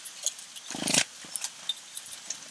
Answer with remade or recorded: recorded